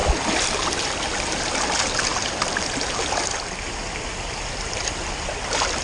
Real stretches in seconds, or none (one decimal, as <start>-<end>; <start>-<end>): 0.0-5.8

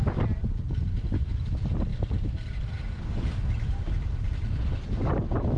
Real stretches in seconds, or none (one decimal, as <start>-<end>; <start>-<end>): 0.0-5.6

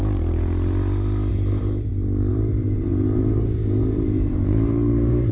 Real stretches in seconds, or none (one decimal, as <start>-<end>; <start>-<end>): 0.0-1.3; 1.9-2.3

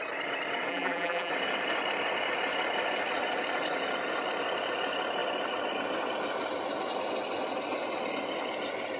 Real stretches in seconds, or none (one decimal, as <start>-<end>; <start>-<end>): 0.0-0.7; 1.3-9.0

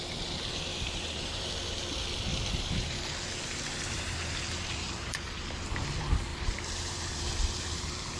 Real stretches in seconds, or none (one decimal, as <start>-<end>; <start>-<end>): 0.0-0.7; 1.5-2.3; 5.7-6.3

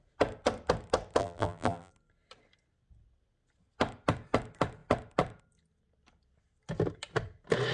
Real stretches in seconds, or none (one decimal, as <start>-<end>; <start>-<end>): 0.0-1.2; 1.9-7.7